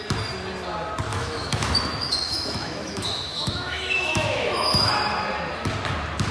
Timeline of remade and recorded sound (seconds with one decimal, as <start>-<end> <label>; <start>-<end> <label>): 0.0-1.1 recorded; 1.1-4.9 remade; 4.9-6.3 recorded